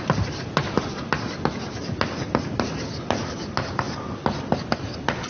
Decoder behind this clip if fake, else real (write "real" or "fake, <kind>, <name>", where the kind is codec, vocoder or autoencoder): real